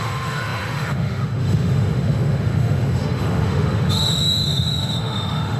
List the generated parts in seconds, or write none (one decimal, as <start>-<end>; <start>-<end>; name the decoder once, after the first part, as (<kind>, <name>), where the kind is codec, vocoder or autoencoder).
0.0-5.6 (autoencoder, DAC-VAE)